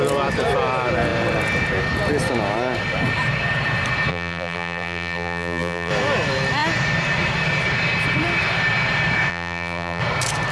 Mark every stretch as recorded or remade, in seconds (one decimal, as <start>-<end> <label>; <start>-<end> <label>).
0.0-4.1 recorded; 4.1-5.9 remade; 5.9-9.3 recorded; 9.3-10.0 remade; 10.0-10.5 recorded